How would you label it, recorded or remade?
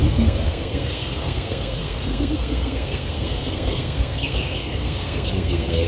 remade